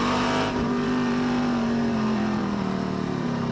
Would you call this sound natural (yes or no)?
no